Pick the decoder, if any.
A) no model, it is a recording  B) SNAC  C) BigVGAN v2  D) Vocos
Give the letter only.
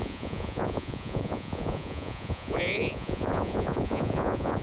D